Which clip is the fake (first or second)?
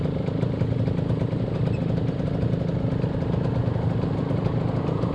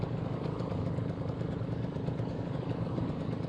second